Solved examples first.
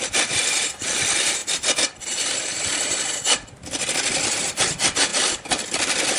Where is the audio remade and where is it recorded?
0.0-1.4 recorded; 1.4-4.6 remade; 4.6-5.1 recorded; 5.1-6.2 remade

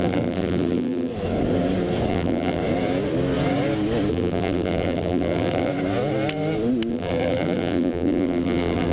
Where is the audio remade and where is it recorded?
0.0-1.1 remade; 1.1-2.1 recorded; 2.1-2.6 remade; 2.6-4.1 recorded; 4.1-5.7 remade; 5.7-6.9 recorded; 6.9-8.9 remade

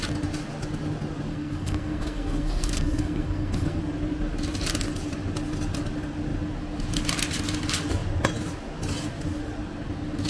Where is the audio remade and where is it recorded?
0.0-1.3 recorded; 1.3-3.8 remade; 3.8-10.3 recorded

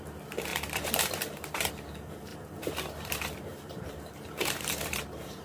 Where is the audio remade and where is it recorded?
0.0-0.5 recorded; 0.5-1.7 remade; 1.7-2.3 recorded; 2.3-3.1 remade; 3.1-3.5 recorded; 3.5-5.4 remade

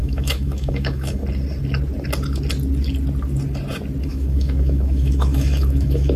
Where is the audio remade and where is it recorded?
0.0-1.2 remade; 1.2-4.1 recorded; 4.1-6.2 remade

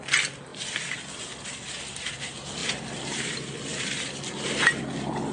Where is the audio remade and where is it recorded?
0.0-3.7 recorded; 3.7-4.6 remade; 4.6-5.3 recorded

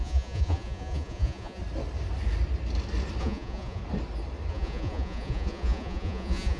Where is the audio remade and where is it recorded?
0.0-1.6 remade; 1.6-3.2 recorded; 3.2-3.8 remade; 3.8-4.5 recorded; 4.5-6.6 remade